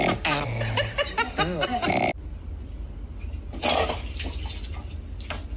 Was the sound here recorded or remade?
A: recorded